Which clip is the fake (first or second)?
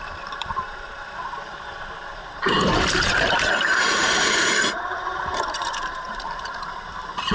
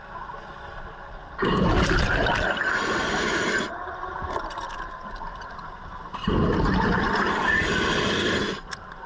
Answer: first